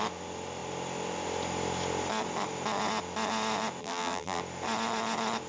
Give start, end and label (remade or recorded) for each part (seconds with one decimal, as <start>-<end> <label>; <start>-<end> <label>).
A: 0.0-3.8 recorded; 3.8-4.4 remade; 4.4-5.5 recorded